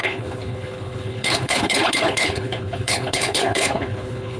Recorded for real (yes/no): no